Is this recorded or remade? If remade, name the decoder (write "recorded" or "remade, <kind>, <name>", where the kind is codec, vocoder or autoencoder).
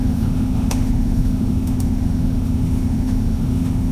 remade, autoencoder, DAC-VAE